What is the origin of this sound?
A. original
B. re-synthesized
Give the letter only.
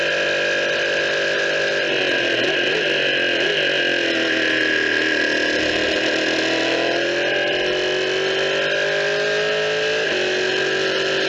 A